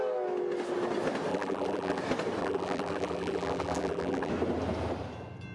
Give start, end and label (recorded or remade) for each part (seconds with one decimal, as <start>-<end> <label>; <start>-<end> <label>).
0.0-1.3 recorded; 1.3-2.0 remade; 2.0-2.4 recorded; 2.4-4.3 remade; 4.3-5.5 recorded